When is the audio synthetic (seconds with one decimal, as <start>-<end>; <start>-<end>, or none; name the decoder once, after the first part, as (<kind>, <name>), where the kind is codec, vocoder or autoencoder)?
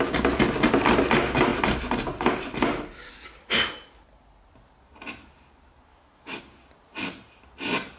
5.9-6.4 (autoencoder, DAC-VAE)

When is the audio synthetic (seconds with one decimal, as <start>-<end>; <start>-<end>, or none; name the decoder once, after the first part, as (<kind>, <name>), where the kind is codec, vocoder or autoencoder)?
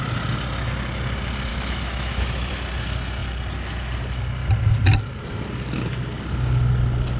1.5-2.5 (autoencoder, DAC-VAE)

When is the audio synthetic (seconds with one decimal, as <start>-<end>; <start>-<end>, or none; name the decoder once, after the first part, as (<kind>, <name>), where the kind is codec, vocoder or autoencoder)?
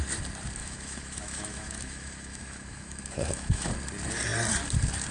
0.6-3.7 (autoencoder, DAC-VAE)